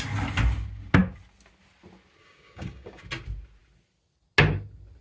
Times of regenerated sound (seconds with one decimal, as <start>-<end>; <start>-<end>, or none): 2.2-3.0